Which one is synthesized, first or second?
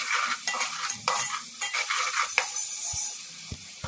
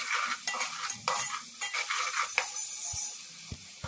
first